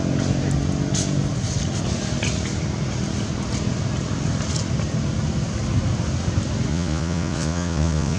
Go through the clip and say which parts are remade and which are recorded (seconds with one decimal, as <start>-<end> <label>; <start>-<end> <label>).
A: 0.0-6.7 recorded; 6.7-8.2 remade

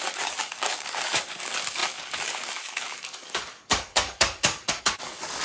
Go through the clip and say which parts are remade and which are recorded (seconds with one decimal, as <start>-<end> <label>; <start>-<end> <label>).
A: 0.0-5.4 remade

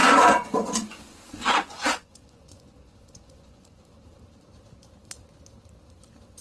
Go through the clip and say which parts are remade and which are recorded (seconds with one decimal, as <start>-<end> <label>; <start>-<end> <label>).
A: 0.0-3.8 remade; 3.8-6.4 recorded

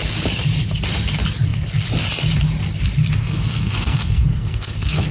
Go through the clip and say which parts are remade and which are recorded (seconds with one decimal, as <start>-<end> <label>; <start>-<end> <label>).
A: 0.0-3.2 recorded; 3.2-5.1 remade

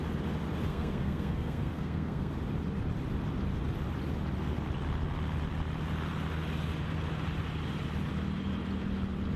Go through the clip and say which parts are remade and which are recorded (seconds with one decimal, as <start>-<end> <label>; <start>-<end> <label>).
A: 0.0-0.7 recorded; 0.7-2.3 remade; 2.3-9.4 recorded

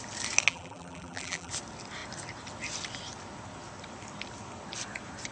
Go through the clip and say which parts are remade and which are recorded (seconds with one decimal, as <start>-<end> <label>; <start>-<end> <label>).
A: 0.0-0.5 recorded; 0.5-1.5 remade; 1.5-5.3 recorded